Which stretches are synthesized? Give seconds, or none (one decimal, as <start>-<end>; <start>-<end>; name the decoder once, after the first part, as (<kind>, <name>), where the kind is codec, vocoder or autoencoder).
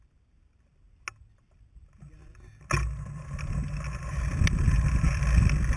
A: none